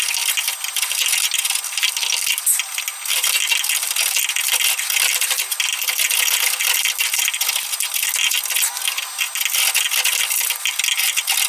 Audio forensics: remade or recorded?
recorded